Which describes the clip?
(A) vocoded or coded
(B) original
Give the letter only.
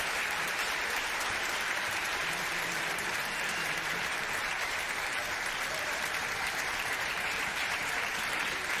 A